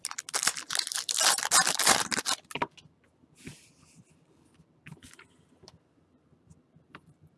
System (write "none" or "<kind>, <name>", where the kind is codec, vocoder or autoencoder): none